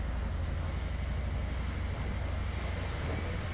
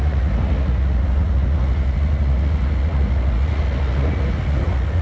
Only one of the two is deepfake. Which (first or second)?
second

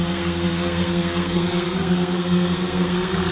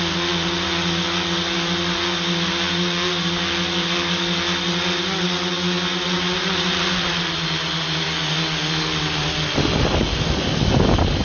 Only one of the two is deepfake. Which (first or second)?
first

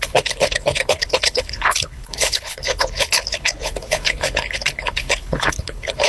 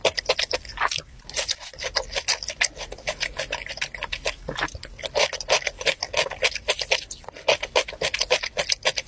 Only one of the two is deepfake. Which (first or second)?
first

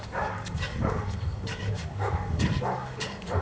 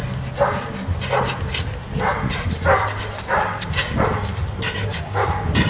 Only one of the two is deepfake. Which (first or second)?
first